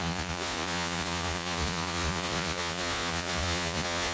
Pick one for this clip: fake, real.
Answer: fake